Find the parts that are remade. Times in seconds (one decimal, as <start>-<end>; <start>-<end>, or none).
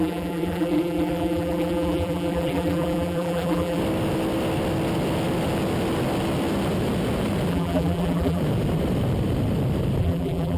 0.0-3.8; 7.5-8.4; 10.0-10.6